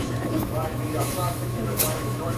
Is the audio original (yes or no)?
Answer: no